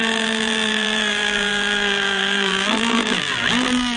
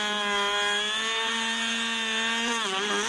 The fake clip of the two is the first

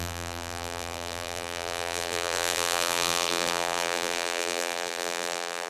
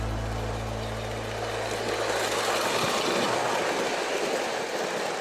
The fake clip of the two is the first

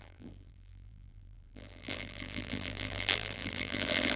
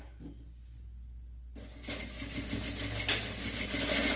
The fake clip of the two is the first